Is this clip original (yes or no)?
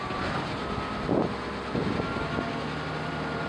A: yes